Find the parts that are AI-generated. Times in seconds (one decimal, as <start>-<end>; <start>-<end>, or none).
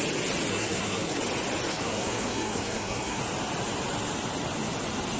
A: 0.5-1.2; 1.7-3.2